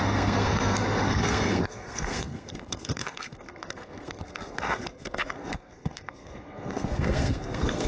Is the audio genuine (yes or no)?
no